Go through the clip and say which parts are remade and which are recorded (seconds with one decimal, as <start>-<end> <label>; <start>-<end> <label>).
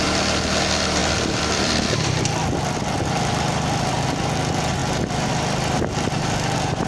0.0-1.0 recorded; 1.0-3.9 remade; 3.9-6.9 recorded